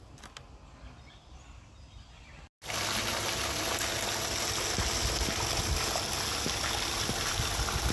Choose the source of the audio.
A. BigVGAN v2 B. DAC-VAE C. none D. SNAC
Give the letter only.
C